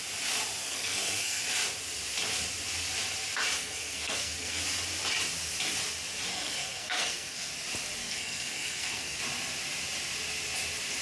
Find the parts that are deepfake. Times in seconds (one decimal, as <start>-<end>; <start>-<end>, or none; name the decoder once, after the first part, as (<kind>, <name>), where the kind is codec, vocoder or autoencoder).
0.6-1.4 (codec, SNAC); 3.6-4.6; 6.3-7.5; 8.0-9.2

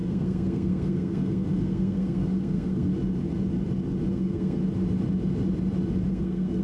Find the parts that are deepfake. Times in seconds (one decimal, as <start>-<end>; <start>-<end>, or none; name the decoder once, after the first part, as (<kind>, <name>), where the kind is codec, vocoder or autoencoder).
0.0-2.9 (codec, SNAC); 4.1-4.6; 6.1-6.6

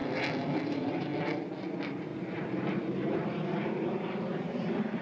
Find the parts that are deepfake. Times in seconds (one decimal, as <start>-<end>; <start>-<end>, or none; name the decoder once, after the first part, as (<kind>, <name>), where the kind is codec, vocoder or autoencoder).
0.7-1.1 (vocoder, BigVGAN v2); 1.7-5.0

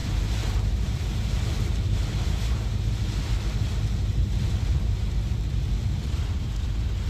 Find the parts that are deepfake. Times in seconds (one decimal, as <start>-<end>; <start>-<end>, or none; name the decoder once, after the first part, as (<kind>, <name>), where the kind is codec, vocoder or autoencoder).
0.0-3.0 (vocoder, BigVGAN v2); 4.1-5.5

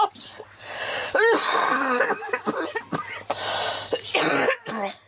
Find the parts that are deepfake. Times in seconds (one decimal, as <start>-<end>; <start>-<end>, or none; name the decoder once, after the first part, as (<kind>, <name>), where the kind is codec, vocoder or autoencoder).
none

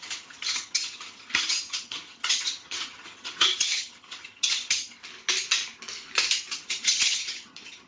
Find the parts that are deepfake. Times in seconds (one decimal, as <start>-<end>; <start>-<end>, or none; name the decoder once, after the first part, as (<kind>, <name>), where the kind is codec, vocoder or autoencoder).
0.0-5.0 (vocoder, HiFi-GAN); 6.5-7.9

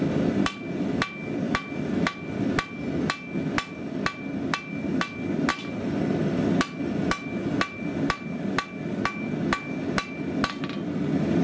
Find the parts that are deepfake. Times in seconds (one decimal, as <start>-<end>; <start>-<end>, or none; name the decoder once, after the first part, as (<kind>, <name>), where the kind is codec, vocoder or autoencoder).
none

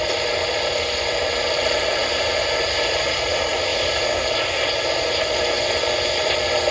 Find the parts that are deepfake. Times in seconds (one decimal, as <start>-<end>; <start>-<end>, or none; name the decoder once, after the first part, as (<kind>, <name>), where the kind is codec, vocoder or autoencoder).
0.0-2.1 (vocoder, BigVGAN v2); 3.0-3.7; 6.2-6.7